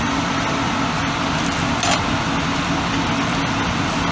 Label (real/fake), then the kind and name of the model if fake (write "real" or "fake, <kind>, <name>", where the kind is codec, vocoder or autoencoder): real